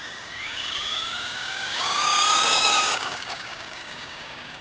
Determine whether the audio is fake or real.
fake